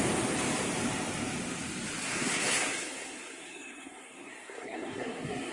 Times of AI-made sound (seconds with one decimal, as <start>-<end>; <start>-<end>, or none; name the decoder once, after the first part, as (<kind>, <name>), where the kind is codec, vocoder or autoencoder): 2.0-5.5 (codec, SNAC)